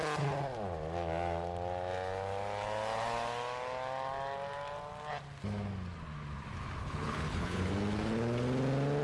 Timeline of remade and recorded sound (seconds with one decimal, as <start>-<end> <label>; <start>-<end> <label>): 0.0-6.8 recorded; 6.8-7.7 remade; 7.7-9.0 recorded

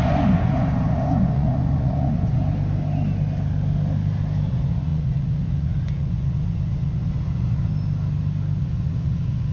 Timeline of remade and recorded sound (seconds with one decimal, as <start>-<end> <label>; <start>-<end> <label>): 0.0-2.4 remade; 2.4-4.5 recorded; 4.5-7.7 remade; 7.7-8.6 recorded; 8.6-9.5 remade

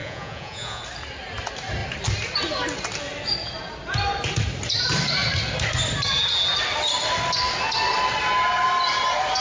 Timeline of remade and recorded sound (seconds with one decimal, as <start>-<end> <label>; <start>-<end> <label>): 0.0-0.8 remade; 0.8-9.4 recorded

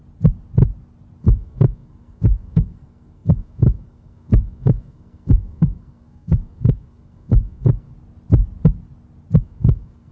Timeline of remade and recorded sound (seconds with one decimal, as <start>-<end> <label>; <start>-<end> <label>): 0.0-1.2 recorded; 1.2-7.9 remade; 7.9-9.4 recorded; 9.4-10.1 remade

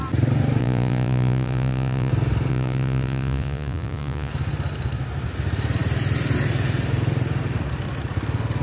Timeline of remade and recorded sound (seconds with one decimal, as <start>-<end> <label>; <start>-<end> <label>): 0.0-0.6 recorded; 0.6-2.1 remade; 2.1-2.5 recorded; 2.5-4.3 remade; 4.3-8.6 recorded

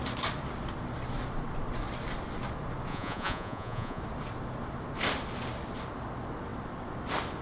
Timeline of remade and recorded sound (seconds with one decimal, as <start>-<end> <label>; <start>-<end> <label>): 0.0-2.9 recorded; 2.9-4.0 remade; 4.0-7.4 recorded

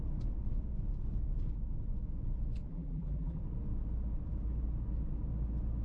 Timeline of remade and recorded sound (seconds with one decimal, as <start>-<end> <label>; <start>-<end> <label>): 0.0-2.7 recorded; 2.7-3.4 remade; 3.4-5.8 recorded